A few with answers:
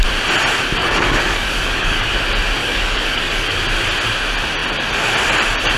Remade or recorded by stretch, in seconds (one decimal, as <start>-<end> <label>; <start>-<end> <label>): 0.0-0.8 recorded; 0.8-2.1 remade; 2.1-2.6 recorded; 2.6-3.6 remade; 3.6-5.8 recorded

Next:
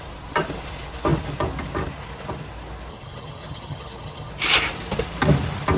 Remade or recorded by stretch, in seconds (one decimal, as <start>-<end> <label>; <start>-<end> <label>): 0.0-2.9 recorded; 2.9-4.3 remade; 4.3-5.8 recorded

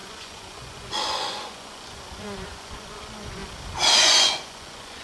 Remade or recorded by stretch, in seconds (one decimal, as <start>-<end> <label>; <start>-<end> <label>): 0.0-3.4 remade; 3.4-3.9 recorded; 3.9-5.0 remade

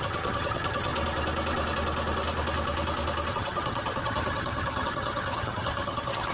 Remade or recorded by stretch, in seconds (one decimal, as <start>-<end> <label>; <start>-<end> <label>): 0.0-0.9 remade; 0.9-3.3 recorded; 3.3-6.3 remade

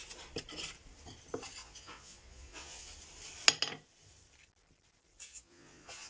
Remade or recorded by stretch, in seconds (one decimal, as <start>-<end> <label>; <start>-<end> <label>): 0.0-1.6 recorded; 1.6-2.9 remade; 2.9-5.2 recorded; 5.2-6.1 remade

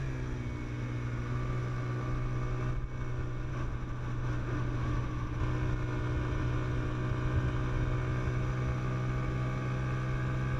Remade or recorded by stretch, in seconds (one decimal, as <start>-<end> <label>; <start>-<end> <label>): 0.0-3.5 recorded; 3.5-5.4 remade; 5.4-10.6 recorded